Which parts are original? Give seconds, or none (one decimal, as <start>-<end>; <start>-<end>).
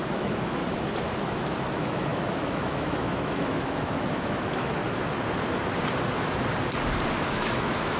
0.6-1.6; 4.8-7.1